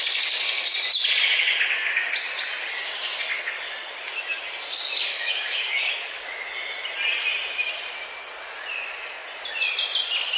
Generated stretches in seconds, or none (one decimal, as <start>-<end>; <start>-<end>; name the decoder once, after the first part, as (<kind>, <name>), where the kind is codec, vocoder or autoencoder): 5.1-6.2 (autoencoder, DAC-VAE)